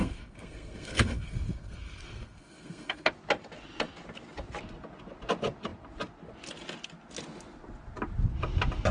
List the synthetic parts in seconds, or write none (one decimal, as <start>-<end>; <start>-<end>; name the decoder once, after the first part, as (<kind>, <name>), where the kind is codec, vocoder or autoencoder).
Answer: 0.0-3.1 (codec, SNAC)